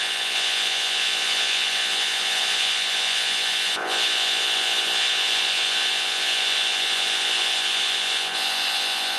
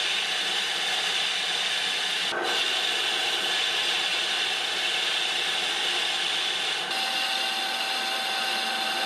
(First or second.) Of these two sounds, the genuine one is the second